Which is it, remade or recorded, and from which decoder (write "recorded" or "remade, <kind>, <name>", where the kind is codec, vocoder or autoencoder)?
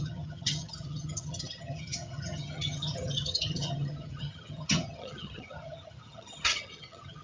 remade, vocoder, HiFi-GAN